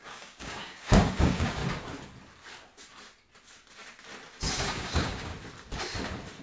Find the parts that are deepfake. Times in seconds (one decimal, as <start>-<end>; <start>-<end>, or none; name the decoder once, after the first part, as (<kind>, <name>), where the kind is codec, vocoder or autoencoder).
0.0-1.6 (codec, DAC); 4.5-5.3